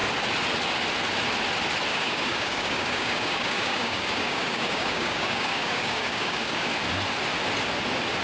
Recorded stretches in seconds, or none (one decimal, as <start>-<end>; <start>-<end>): 0.0-1.9; 6.7-8.2